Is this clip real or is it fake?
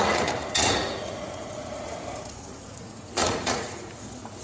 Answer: fake